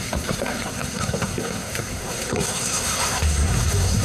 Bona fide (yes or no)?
no